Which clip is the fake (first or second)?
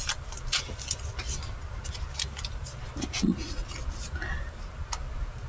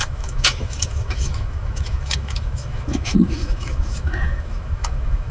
second